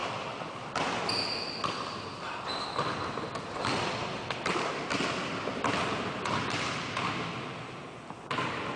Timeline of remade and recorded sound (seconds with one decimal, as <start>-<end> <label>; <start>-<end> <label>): 0.0-4.9 remade; 4.9-8.8 recorded

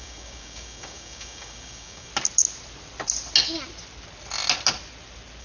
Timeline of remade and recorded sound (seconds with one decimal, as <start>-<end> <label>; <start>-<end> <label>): 0.0-2.1 remade; 2.1-5.4 recorded

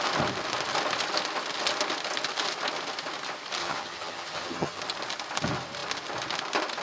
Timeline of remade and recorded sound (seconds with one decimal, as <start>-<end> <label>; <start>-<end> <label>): 0.0-3.6 recorded; 3.6-4.8 remade; 4.8-6.8 recorded

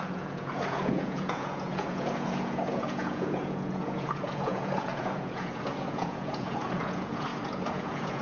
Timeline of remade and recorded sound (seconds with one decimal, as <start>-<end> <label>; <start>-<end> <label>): 0.0-8.2 remade

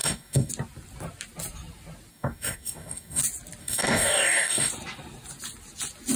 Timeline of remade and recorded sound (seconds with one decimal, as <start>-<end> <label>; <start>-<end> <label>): 0.0-0.5 remade; 0.5-2.1 recorded; 2.1-3.2 remade; 3.2-3.6 recorded; 3.6-4.7 remade; 4.7-6.2 recorded

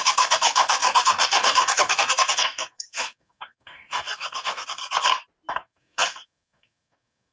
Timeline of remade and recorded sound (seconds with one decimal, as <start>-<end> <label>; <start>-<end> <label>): 0.0-4.8 remade; 4.8-5.5 recorded; 5.5-7.3 remade

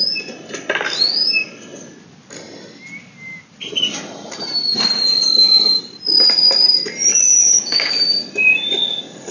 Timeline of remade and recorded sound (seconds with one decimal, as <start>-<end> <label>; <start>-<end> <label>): 0.0-7.3 recorded; 7.3-7.9 remade; 7.9-9.3 recorded

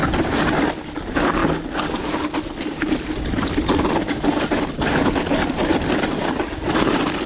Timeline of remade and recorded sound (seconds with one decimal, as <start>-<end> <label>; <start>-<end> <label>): 0.0-0.6 recorded; 0.6-1.4 remade; 1.4-2.2 recorded; 2.2-7.3 remade